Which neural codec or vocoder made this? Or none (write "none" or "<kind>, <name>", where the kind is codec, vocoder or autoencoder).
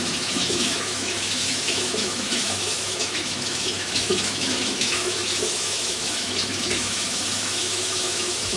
autoencoder, DAC-VAE